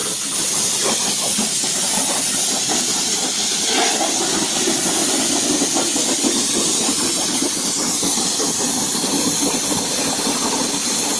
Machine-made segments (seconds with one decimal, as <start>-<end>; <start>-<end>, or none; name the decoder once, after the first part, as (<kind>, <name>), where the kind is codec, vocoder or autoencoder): 5.0-5.5 (vocoder, Vocos)